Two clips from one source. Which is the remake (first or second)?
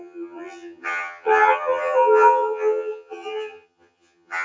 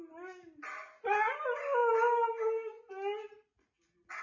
first